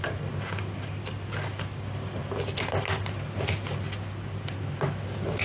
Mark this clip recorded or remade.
recorded